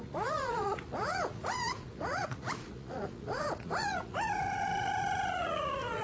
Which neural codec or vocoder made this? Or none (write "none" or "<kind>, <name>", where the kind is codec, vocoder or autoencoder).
vocoder, Vocos